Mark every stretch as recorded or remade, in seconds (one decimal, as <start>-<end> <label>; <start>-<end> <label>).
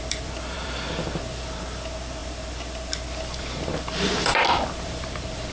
0.0-5.5 remade